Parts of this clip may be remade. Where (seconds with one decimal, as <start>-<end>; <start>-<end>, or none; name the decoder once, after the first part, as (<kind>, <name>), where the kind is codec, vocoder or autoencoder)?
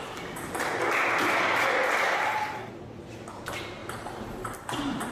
3.8-5.1 (vocoder, BigVGAN v2)